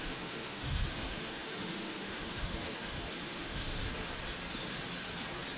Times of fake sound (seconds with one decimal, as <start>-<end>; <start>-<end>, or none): 0.0-3.8